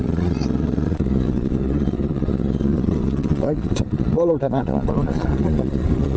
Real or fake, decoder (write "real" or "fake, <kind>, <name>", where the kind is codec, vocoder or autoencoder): fake, vocoder, Vocos